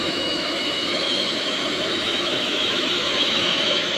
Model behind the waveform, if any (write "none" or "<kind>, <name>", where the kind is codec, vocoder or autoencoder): autoencoder, DAC-VAE